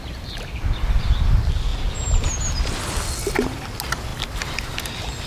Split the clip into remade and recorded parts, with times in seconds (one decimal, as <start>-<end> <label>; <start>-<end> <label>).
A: 0.0-4.1 recorded; 4.1-5.3 remade